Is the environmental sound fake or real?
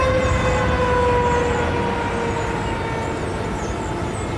real